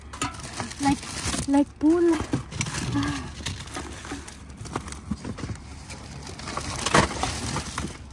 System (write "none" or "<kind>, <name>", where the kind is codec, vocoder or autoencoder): none